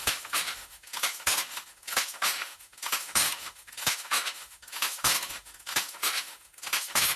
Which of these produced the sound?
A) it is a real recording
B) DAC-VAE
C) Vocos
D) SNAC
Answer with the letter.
B